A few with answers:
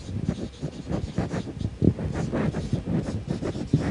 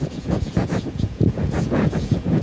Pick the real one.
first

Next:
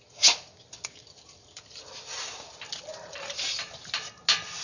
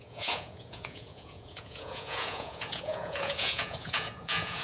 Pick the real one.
first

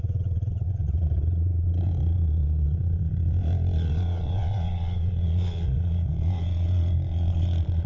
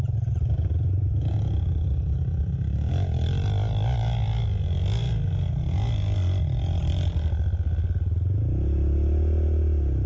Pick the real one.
second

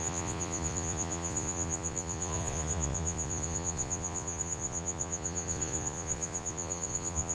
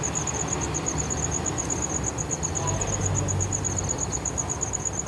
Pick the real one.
second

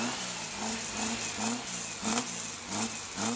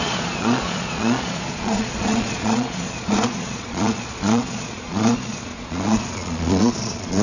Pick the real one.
first